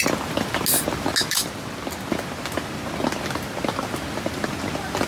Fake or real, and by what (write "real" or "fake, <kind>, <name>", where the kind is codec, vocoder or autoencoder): real